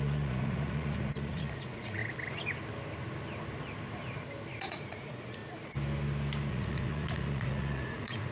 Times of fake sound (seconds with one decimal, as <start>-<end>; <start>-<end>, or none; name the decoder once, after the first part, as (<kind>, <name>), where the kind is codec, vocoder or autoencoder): 0.0-2.0 (vocoder, Vocos); 4.5-5.4; 6.5-8.3